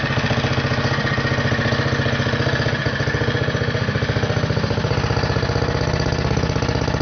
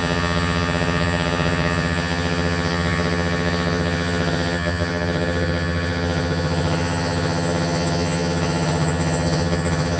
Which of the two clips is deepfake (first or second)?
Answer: second